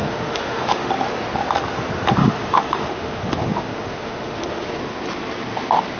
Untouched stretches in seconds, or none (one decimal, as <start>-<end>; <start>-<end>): 0.9-2.2; 4.7-6.0